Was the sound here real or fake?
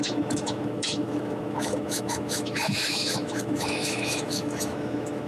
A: fake